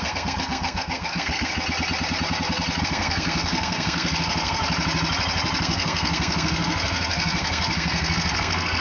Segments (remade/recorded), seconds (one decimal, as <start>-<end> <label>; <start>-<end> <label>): 0.0-1.5 remade; 1.5-2.8 recorded; 2.8-4.6 remade; 4.6-5.6 recorded; 5.6-8.8 remade